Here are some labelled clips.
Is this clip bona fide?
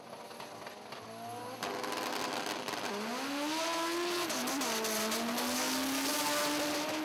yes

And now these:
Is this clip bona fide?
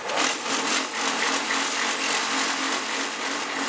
yes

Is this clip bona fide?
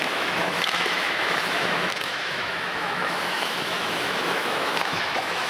no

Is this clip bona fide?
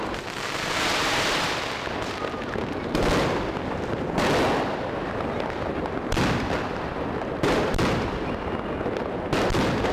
yes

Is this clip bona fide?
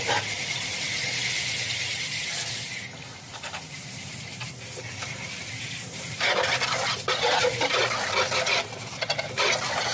yes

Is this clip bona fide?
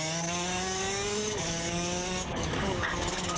no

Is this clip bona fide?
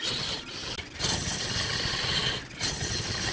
yes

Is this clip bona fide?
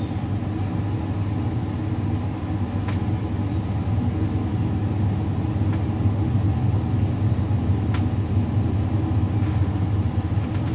yes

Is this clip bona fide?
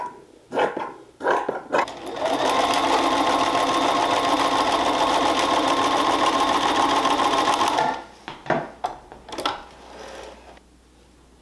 yes